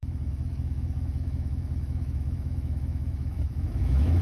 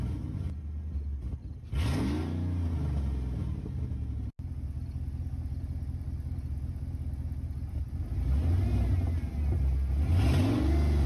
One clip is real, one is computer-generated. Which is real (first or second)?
second